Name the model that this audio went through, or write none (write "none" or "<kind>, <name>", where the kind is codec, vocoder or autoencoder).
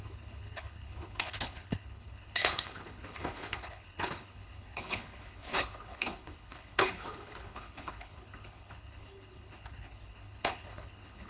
codec, HILCodec